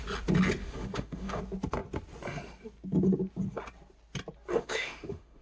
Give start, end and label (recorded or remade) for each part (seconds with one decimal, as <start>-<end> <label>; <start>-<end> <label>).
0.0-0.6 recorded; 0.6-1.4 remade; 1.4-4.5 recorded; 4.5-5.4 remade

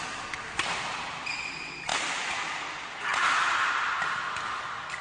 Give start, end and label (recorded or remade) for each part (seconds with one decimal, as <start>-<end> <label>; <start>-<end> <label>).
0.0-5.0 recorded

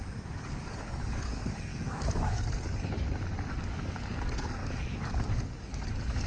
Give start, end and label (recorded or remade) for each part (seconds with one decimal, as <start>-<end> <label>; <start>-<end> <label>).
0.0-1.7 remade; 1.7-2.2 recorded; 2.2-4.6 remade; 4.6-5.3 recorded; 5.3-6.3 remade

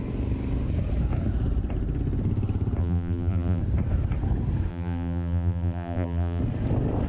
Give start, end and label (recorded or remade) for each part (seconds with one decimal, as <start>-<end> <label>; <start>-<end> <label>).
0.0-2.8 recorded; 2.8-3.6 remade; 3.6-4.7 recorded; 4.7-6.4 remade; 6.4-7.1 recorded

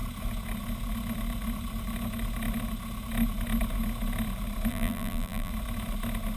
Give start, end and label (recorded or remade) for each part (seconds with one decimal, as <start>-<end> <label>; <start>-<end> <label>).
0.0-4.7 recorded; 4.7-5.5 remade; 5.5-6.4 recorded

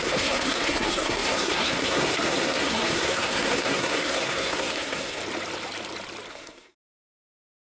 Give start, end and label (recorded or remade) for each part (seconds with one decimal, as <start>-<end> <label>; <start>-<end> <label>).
0.0-5.2 remade; 5.2-6.3 recorded; 6.3-7.7 remade

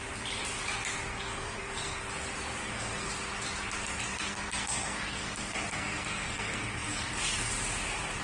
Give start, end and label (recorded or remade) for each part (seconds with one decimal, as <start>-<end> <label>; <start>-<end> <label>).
0.0-1.1 recorded; 1.1-2.0 remade; 2.0-2.6 recorded; 2.6-3.1 remade; 3.1-4.1 recorded; 4.1-7.5 remade; 7.5-8.2 recorded

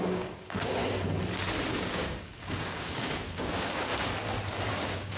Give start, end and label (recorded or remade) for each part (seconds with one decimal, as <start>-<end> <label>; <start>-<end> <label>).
0.0-0.8 remade; 0.8-1.7 recorded; 1.7-3.9 remade; 3.9-4.7 recorded; 4.7-5.2 remade